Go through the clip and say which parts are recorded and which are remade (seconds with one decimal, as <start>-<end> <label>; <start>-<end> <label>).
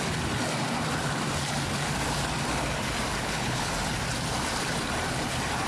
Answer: 0.0-3.2 recorded; 3.2-3.7 remade; 3.7-5.7 recorded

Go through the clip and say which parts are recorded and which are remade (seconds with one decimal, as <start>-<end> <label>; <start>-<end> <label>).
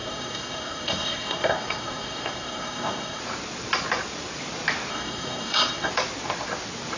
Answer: 0.0-3.2 remade; 3.2-4.9 recorded; 4.9-5.9 remade; 5.9-7.0 recorded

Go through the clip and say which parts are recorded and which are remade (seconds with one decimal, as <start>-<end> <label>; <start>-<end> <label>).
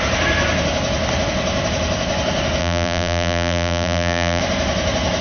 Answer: 0.0-2.6 recorded; 2.6-4.4 remade; 4.4-5.2 recorded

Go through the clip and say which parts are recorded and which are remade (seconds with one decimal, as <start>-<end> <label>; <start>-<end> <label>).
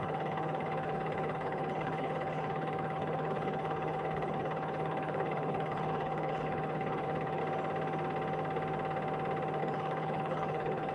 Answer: 0.0-7.4 remade; 7.4-9.6 recorded; 9.6-10.9 remade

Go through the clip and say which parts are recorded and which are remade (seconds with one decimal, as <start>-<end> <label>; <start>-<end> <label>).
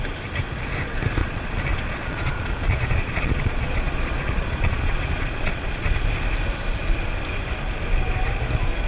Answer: 0.0-1.2 recorded; 1.2-5.9 remade; 5.9-8.9 recorded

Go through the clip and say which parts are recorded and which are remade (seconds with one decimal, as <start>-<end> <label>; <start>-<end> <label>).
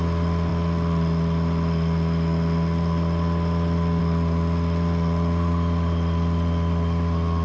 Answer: 0.0-7.4 recorded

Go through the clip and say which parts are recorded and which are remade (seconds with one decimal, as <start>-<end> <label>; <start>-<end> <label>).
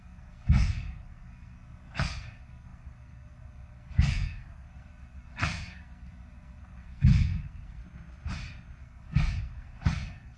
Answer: 0.0-7.8 remade; 7.8-8.8 recorded; 8.8-10.4 remade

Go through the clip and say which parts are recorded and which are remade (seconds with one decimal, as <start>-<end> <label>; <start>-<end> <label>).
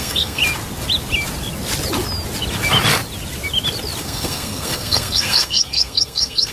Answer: 0.0-0.4 remade; 0.4-4.0 recorded; 4.0-6.5 remade